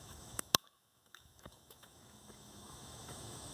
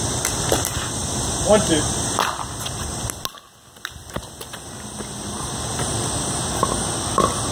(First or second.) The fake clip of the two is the first